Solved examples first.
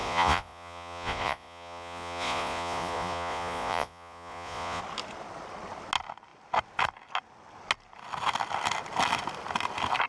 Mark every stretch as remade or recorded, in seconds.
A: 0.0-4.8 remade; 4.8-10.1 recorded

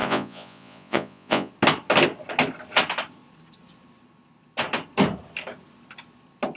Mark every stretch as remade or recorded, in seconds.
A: 0.0-1.5 remade; 1.5-6.6 recorded